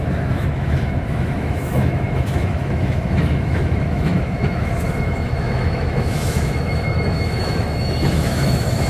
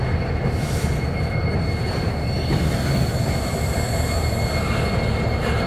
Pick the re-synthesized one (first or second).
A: first